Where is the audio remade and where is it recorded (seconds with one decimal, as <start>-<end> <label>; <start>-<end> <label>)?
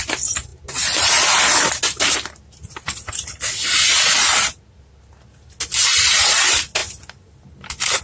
0.0-8.0 recorded